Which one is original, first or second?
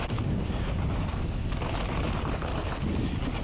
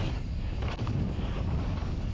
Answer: first